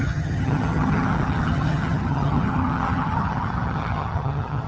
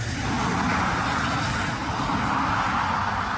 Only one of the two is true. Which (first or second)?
second